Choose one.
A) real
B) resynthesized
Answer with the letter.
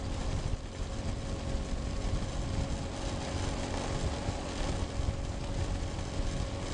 B